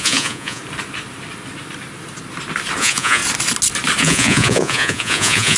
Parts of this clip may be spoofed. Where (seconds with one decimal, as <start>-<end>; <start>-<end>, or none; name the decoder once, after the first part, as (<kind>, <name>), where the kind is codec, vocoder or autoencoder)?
0.0-0.6 (vocoder, Vocos); 2.8-3.2; 4.0-5.6